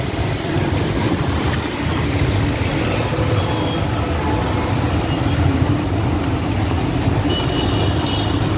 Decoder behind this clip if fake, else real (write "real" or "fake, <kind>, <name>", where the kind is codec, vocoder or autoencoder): real